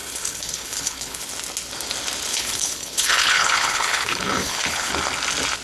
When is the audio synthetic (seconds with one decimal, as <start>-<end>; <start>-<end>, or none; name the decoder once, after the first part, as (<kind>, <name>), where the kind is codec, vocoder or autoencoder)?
0.0-1.3 (codec, HILCodec); 2.3-4.9